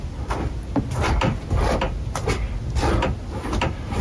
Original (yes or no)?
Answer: yes